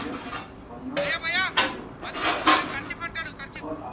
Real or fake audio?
real